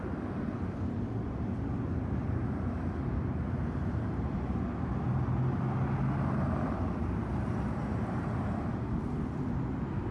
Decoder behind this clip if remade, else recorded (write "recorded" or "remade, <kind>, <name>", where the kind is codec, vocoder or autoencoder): recorded